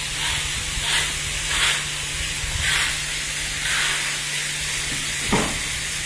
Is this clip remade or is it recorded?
recorded